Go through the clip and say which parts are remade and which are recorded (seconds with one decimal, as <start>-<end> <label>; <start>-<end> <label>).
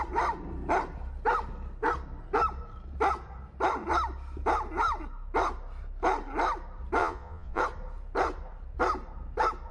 0.0-7.0 recorded; 7.0-7.6 remade; 7.6-9.7 recorded